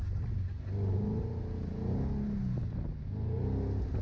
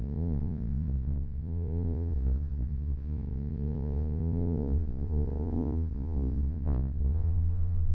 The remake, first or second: second